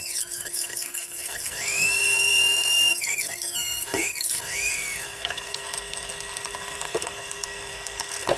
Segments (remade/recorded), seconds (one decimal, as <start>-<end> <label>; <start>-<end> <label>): 0.0-8.4 remade